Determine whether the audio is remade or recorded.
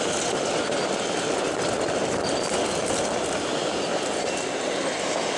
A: recorded